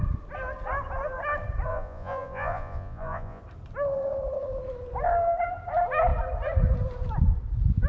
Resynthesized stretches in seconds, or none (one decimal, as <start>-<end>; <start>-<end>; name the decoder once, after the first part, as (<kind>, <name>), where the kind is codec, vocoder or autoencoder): 1.7-3.4 (vocoder, Vocos)